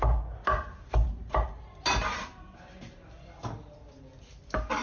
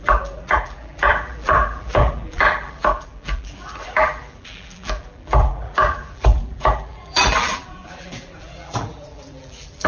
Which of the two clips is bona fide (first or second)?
first